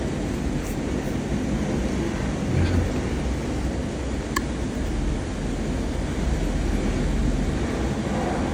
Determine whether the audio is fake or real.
real